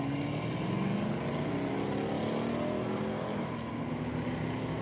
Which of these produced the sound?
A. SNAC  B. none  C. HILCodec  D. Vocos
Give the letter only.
B